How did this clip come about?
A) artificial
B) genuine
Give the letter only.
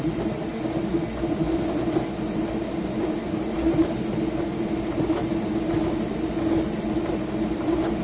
B